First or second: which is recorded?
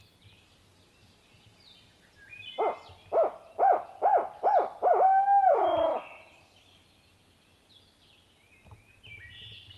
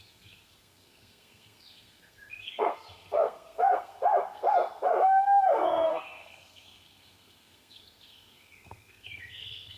first